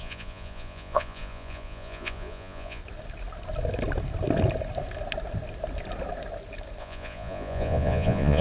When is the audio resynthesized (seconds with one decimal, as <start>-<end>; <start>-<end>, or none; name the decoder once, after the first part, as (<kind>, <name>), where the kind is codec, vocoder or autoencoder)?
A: 0.0-2.8 (vocoder, Vocos); 6.8-8.4